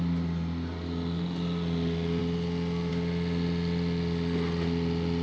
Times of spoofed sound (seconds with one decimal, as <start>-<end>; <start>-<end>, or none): none